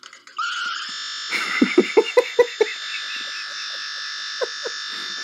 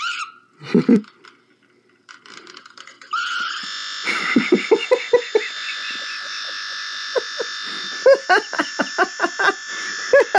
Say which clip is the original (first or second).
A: first